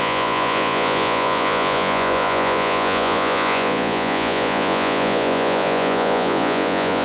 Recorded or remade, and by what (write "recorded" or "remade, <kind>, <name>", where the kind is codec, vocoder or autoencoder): remade, vocoder, Vocos